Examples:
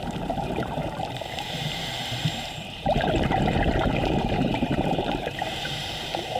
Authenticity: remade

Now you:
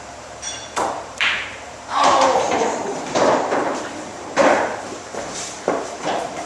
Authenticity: remade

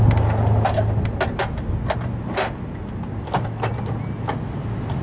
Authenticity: recorded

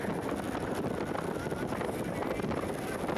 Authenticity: recorded